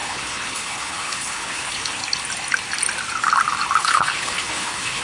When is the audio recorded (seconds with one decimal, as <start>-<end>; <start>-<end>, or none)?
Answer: 2.0-3.8